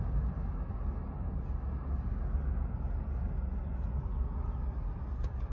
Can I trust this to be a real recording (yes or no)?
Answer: yes